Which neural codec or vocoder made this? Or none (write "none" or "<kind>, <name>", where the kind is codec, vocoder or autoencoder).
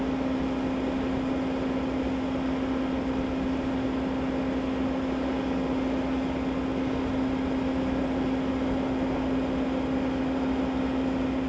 none